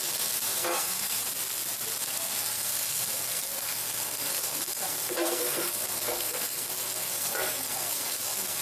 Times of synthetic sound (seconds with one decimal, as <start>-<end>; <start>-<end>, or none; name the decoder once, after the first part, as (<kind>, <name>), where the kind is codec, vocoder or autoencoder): 0.0-1.2 (codec, SNAC); 2.0-8.6